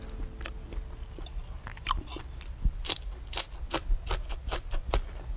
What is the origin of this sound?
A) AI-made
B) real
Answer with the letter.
B